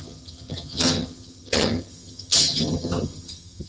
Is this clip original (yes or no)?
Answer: no